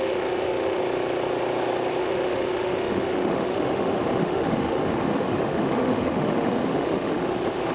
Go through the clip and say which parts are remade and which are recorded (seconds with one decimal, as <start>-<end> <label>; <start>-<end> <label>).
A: 0.0-0.8 remade; 0.8-2.0 recorded; 2.0-7.7 remade